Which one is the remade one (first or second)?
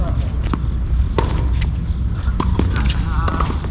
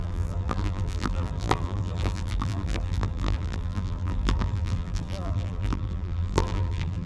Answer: second